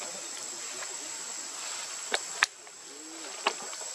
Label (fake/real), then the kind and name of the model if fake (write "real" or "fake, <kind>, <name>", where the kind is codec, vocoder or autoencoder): real